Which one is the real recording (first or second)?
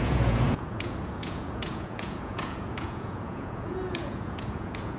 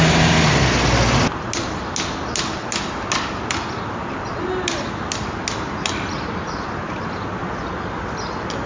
second